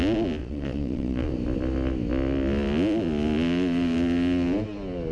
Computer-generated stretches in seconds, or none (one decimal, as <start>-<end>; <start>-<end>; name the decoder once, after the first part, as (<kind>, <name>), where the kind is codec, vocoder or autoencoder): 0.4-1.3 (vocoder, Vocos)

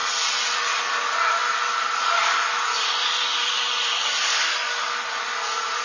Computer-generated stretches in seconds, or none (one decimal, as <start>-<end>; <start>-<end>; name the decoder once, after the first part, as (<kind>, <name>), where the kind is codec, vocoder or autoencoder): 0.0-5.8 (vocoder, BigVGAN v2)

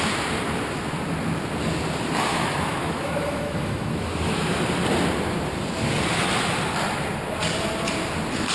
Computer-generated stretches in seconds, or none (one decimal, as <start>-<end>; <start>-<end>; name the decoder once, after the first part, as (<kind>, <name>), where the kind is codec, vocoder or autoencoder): 2.3-4.6 (autoencoder, DAC-VAE)